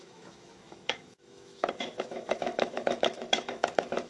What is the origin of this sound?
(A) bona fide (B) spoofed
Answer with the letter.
B